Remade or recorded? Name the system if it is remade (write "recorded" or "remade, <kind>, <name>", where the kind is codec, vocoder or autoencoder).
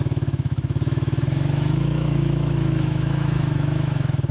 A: remade, autoencoder, DAC-VAE